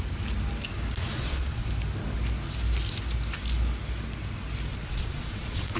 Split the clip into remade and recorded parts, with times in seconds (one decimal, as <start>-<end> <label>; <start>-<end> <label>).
0.0-1.0 recorded; 1.0-1.7 remade; 1.7-4.7 recorded; 4.7-5.8 remade